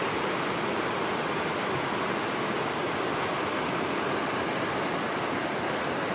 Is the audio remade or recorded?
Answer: recorded